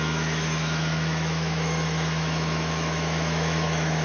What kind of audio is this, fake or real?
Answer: fake